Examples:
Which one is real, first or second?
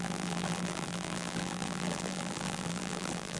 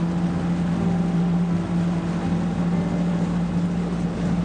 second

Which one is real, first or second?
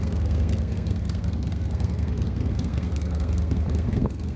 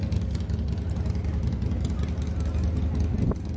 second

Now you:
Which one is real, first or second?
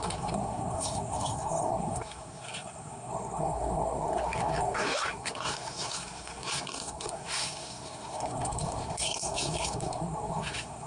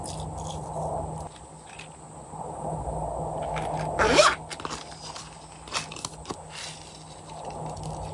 second